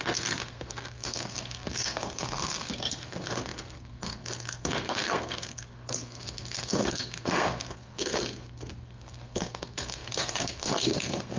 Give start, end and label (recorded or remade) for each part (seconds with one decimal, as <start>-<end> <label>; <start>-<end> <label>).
0.0-11.4 remade

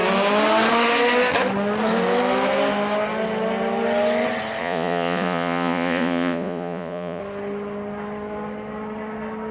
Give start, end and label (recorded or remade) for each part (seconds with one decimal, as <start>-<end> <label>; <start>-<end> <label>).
0.0-4.6 recorded; 4.6-7.2 remade; 7.2-9.5 recorded

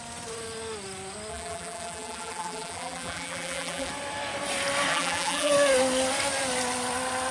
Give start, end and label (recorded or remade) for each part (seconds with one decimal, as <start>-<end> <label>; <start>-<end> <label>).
0.0-1.3 recorded; 1.3-3.9 remade; 3.9-4.9 recorded; 4.9-5.5 remade; 5.5-7.3 recorded

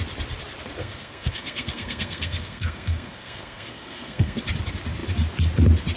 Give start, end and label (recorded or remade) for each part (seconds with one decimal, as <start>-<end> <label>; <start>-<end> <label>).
0.0-0.8 recorded; 0.8-4.4 remade; 4.4-6.0 recorded

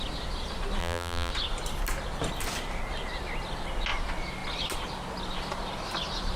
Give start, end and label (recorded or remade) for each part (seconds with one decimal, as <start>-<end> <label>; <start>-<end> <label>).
0.0-0.8 recorded; 0.8-1.3 remade; 1.3-6.4 recorded